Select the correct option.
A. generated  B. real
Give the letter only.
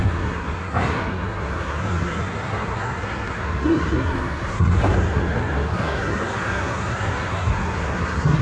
A